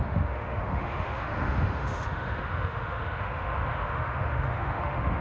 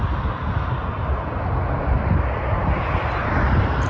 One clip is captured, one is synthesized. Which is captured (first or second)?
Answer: second